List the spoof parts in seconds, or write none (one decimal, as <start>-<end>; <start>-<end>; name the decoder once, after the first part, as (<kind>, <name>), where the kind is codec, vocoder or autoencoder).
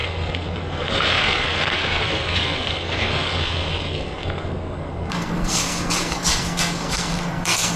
0.0-7.8 (codec, SNAC)